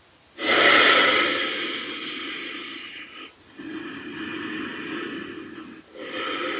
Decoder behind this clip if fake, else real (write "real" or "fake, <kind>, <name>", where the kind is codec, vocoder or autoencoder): real